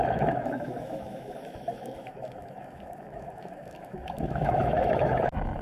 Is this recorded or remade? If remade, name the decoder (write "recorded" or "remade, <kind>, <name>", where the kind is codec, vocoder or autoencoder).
remade, autoencoder, DAC-VAE